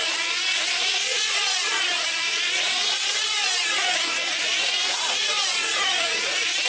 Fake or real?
fake